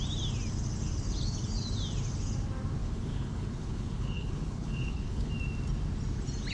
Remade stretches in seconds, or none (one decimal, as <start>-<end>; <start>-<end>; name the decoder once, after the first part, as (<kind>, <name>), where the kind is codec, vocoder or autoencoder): 2.8-5.3 (codec, HILCodec)